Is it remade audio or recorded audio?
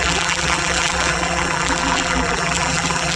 remade